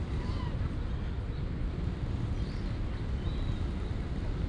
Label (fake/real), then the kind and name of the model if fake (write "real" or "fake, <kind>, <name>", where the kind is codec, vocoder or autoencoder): real